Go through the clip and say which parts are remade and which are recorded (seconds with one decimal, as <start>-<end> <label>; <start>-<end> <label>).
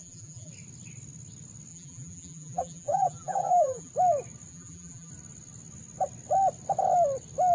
0.0-0.5 remade; 0.5-1.7 recorded; 1.7-3.9 remade; 3.9-4.5 recorded; 4.5-5.1 remade; 5.1-7.5 recorded